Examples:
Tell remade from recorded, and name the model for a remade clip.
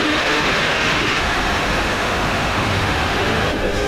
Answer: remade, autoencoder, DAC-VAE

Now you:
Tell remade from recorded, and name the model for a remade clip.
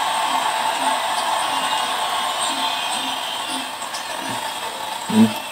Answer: recorded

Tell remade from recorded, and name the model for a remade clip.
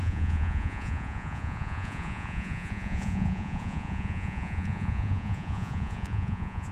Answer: remade, vocoder, Vocos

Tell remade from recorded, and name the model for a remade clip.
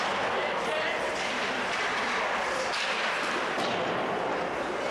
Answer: remade, vocoder, BigVGAN v2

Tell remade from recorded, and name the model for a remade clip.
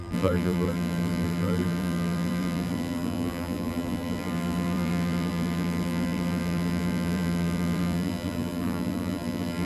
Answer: remade, vocoder, BigVGAN v2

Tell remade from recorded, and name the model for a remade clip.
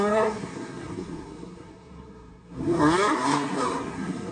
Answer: remade, codec, SNAC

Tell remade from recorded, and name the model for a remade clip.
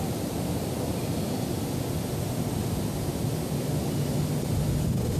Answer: recorded